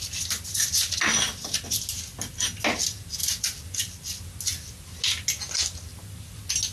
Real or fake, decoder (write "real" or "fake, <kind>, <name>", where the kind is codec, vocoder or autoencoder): real